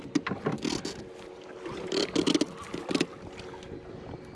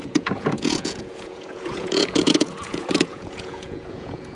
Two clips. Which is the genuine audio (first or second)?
first